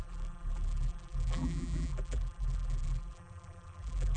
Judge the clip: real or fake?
fake